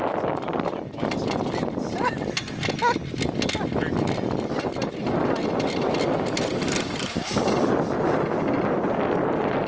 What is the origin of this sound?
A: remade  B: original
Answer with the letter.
B